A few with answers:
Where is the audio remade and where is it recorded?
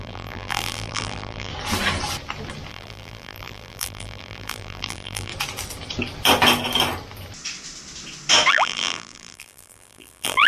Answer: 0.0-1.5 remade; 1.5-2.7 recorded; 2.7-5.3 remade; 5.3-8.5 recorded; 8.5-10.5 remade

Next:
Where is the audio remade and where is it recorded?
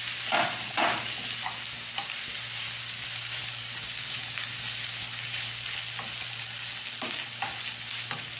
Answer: 0.0-8.4 recorded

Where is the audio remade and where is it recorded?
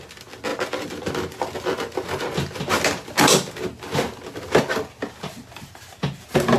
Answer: 0.0-0.5 recorded; 0.5-1.1 remade; 1.1-6.6 recorded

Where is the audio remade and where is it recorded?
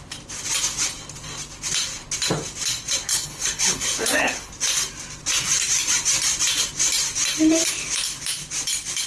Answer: 0.0-3.1 recorded; 3.1-4.5 remade; 4.5-9.1 recorded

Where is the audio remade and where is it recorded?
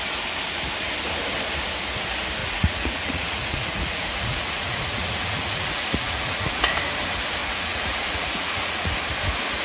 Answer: 0.0-2.4 recorded; 2.4-6.6 remade; 6.6-7.4 recorded; 7.4-8.9 remade; 8.9-9.6 recorded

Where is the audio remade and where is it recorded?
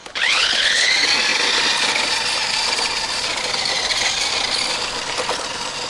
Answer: 0.0-0.9 remade; 0.9-5.9 recorded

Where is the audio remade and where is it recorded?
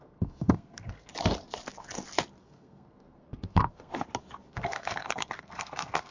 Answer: 0.0-1.1 remade; 1.1-2.4 recorded; 2.4-3.9 remade; 3.9-4.5 recorded; 4.5-6.1 remade